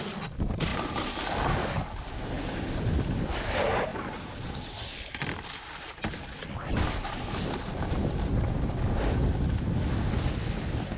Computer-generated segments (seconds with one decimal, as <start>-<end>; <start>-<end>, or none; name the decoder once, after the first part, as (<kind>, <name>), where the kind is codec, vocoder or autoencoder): none